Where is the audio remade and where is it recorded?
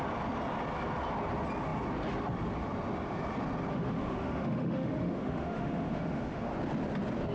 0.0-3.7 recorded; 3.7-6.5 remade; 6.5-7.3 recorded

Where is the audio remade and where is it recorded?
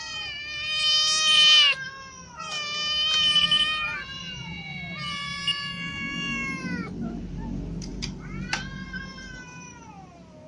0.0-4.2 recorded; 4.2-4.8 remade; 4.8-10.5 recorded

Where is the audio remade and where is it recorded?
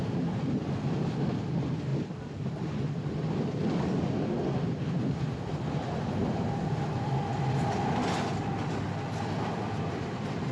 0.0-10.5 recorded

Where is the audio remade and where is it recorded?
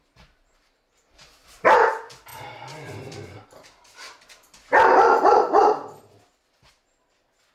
0.0-1.4 recorded; 1.4-1.9 remade; 1.9-7.5 recorded